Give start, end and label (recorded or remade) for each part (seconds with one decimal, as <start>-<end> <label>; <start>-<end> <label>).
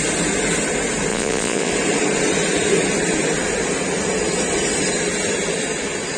0.0-1.1 recorded; 1.1-1.7 remade; 1.7-6.2 recorded